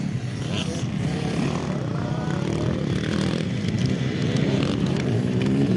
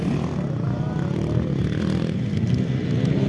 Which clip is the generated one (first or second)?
first